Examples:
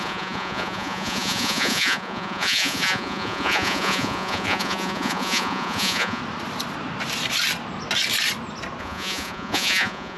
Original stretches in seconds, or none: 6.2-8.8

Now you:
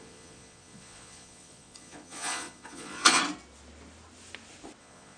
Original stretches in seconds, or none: 3.2-4.8

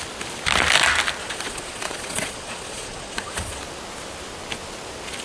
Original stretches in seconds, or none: 0.0-1.2; 3.6-5.2

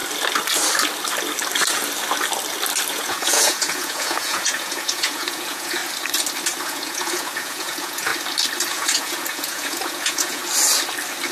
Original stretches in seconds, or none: 0.0-2.9; 5.8-6.6; 8.1-8.7; 10.4-11.3

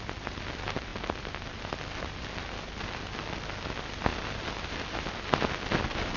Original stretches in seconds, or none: 0.0-6.2

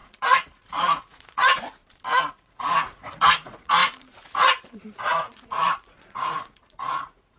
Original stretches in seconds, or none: 1.8-2.3

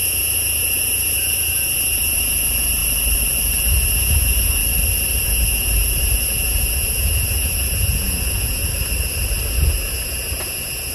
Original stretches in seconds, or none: 2.8-3.6; 4.6-5.2; 8.6-9.5

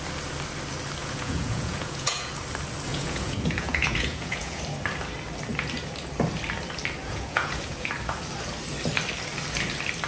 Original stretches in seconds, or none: 0.0-1.0; 2.3-2.9; 4.6-7.0; 7.9-10.1